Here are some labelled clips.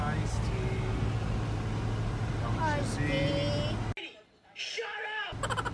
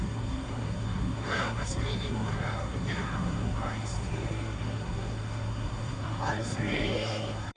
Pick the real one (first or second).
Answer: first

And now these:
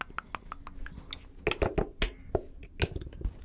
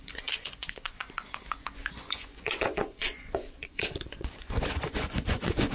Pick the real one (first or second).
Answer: first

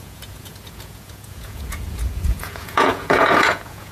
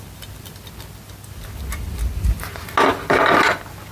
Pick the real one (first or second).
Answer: second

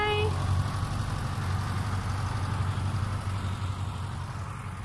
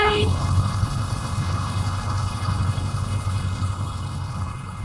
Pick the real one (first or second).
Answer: first